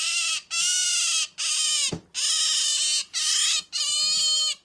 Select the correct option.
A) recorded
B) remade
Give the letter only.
A